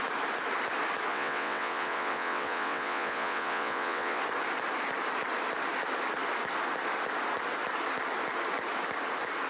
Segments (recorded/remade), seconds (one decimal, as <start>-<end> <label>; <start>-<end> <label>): 0.0-1.1 recorded; 1.1-4.2 remade; 4.2-9.5 recorded